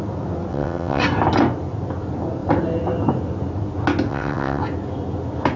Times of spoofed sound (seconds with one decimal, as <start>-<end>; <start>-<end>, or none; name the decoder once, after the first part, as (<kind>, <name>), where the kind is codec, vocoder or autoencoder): 0.5-1.0 (vocoder, WaveNeXt); 4.1-4.6